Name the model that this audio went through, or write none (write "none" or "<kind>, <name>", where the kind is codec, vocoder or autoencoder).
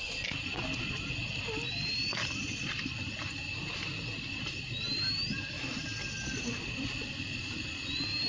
none